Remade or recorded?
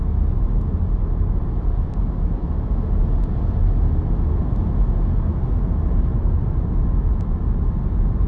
recorded